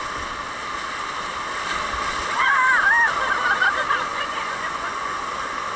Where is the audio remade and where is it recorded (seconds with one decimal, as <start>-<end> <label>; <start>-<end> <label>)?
0.0-4.1 recorded; 4.1-5.2 remade; 5.2-5.8 recorded